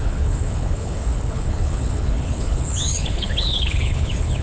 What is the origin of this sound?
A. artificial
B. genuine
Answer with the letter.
A